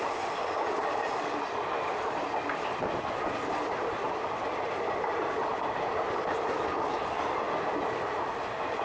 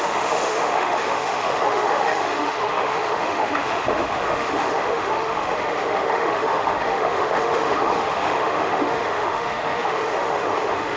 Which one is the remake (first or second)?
second